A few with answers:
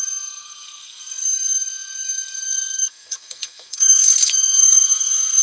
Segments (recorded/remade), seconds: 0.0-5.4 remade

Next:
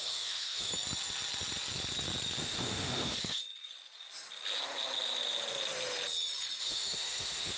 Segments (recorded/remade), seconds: 0.0-0.7 remade; 0.7-2.4 recorded; 2.4-3.4 remade; 3.4-6.6 recorded; 6.6-7.6 remade

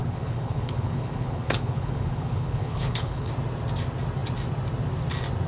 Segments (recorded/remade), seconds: 0.0-3.3 remade; 3.3-5.5 recorded

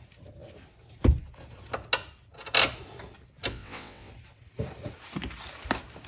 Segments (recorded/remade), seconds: 0.0-3.5 recorded; 3.5-4.1 remade; 4.1-6.1 recorded

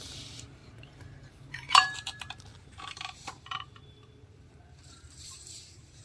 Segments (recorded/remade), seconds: 0.0-0.6 remade; 0.6-1.3 recorded; 1.3-6.0 remade

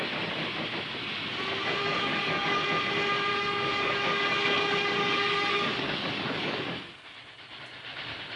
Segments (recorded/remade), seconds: 0.0-1.8 recorded; 1.8-2.7 remade; 2.7-3.3 recorded; 3.3-6.8 remade; 6.8-8.4 recorded

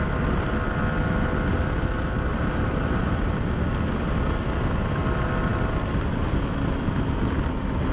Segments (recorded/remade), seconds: 0.0-2.3 recorded; 2.3-3.3 remade; 3.3-7.9 recorded

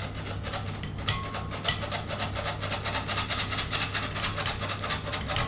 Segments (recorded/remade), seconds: 0.0-5.5 recorded